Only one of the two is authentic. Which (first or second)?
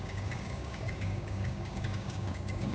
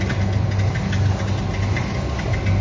second